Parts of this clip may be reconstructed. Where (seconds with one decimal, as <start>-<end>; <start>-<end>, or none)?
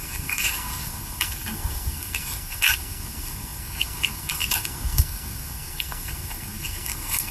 0.0-7.3